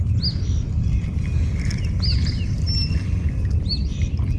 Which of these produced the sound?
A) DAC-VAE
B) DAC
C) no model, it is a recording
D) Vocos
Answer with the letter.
C